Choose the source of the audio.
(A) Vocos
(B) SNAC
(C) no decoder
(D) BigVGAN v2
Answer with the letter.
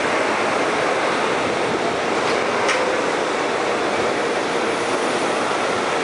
C